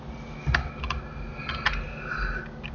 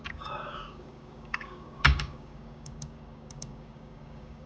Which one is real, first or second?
first